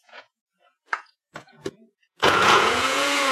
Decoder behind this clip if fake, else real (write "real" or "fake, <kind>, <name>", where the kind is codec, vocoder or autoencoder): fake, vocoder, Vocos